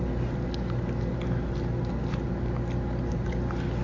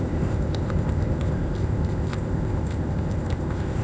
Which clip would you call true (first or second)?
first